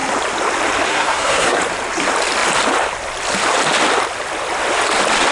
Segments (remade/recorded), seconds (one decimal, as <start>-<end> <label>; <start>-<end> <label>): 0.0-0.9 recorded; 0.9-1.6 remade; 1.6-5.3 recorded